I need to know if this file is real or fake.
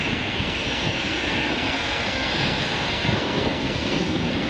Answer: fake